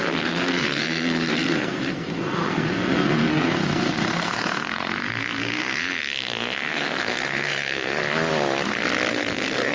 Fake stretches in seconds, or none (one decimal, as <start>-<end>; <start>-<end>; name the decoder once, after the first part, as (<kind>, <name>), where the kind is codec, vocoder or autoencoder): 0.0-8.0 (codec, SNAC); 9.1-9.7